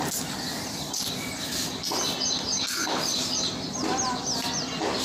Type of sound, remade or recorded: recorded